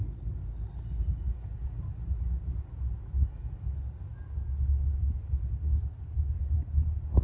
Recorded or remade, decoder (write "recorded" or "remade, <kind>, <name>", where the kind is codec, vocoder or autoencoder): recorded